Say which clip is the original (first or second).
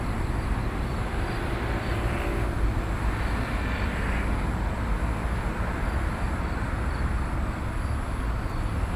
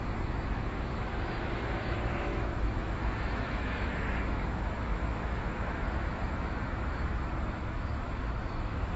first